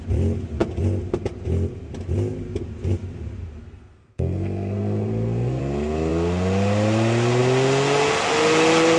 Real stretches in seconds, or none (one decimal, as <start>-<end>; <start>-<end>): 0.0-3.6; 5.6-9.0